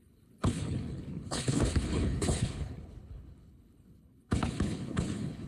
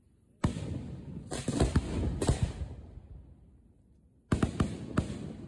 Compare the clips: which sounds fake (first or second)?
first